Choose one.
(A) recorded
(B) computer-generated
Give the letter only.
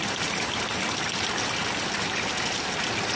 A